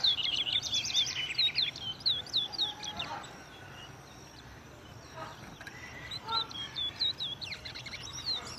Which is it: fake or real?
fake